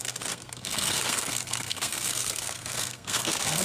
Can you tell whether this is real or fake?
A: fake